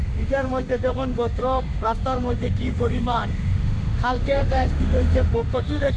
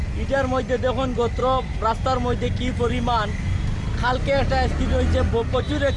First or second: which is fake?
first